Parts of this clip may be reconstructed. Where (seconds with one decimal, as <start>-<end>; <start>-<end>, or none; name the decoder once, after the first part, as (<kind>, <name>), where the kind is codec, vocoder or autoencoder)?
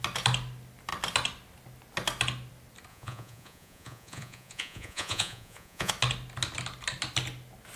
2.9-5.9 (vocoder, Vocos)